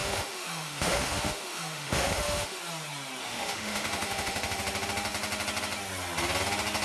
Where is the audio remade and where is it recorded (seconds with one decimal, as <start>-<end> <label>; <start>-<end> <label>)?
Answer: 0.0-2.6 remade; 2.6-3.2 recorded; 3.2-4.6 remade; 4.6-6.8 recorded